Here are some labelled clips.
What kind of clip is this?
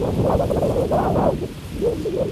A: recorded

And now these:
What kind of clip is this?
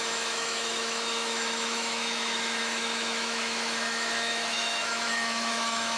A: remade